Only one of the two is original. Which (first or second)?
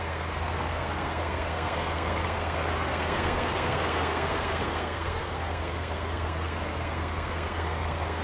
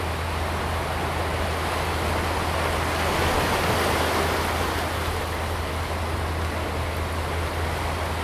second